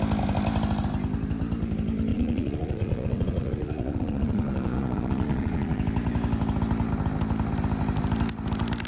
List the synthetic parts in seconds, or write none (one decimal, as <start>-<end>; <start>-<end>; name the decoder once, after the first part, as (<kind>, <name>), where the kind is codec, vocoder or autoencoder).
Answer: 2.1-5.8 (vocoder, Vocos)